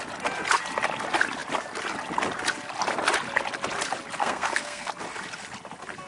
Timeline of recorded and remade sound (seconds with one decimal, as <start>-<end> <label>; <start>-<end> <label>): 0.0-4.2 recorded; 4.2-4.9 remade; 4.9-6.1 recorded